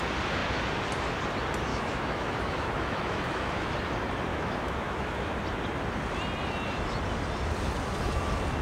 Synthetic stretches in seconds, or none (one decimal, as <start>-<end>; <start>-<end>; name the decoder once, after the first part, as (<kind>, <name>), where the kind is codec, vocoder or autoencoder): 1.7-3.7 (autoencoder, DAC-VAE); 4.3-5.4